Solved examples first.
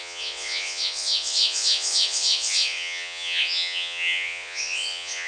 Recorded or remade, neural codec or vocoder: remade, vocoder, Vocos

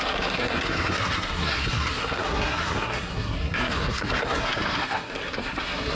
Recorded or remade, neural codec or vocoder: remade, codec, SNAC